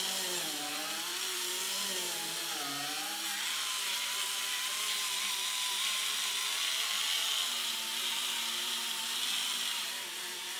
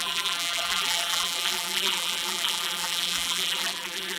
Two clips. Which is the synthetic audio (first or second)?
second